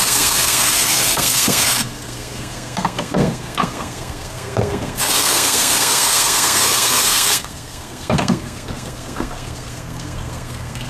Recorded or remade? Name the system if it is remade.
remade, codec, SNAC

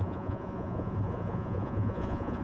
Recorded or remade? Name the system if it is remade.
remade, vocoder, Vocos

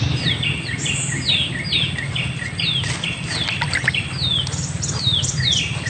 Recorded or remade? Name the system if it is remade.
recorded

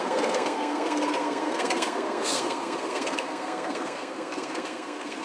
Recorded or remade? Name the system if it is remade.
remade, codec, SNAC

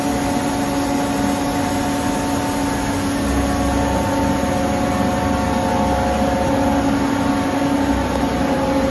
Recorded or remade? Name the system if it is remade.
recorded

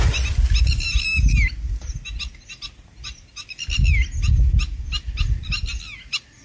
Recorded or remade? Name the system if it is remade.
recorded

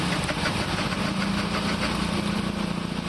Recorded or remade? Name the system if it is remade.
recorded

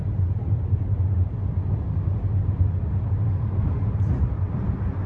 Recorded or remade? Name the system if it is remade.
recorded